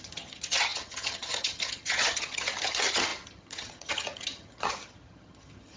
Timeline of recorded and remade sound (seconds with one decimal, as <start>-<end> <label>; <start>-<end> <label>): 0.0-5.8 remade